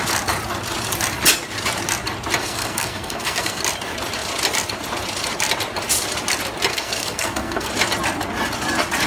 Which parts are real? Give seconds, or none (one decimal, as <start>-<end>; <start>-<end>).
0.0-2.4; 3.6-6.7; 7.7-9.1